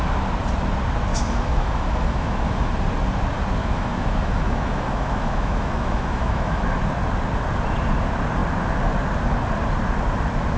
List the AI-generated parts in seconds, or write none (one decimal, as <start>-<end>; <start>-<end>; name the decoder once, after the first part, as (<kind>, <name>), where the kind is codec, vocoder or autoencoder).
1.1-2.7 (autoencoder, DAC-VAE); 3.6-6.6